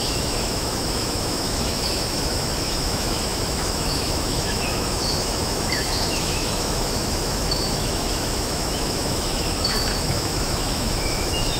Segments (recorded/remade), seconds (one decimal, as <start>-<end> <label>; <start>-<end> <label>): 0.0-11.6 remade